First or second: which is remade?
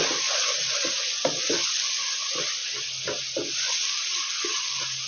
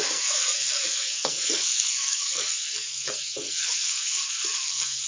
second